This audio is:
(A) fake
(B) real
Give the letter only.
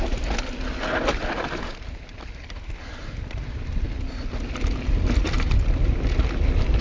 B